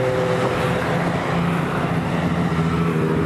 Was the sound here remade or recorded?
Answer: recorded